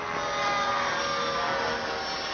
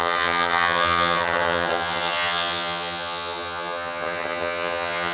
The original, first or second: first